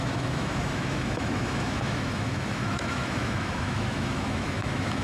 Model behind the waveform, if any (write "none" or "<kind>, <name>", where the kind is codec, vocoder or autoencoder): autoencoder, DAC-VAE